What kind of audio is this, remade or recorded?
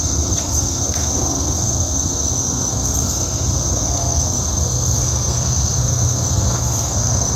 remade